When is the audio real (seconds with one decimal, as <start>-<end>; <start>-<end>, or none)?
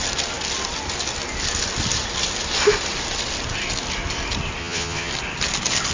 0.0-4.6; 5.1-5.9